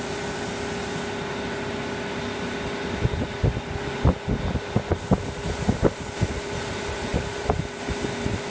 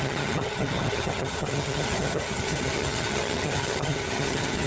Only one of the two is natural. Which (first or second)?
first